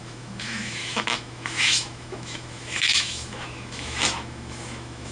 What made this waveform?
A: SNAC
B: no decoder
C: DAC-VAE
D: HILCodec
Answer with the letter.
C